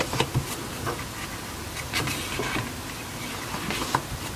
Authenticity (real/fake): real